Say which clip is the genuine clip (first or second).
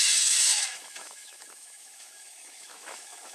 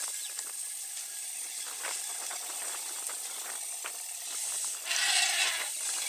second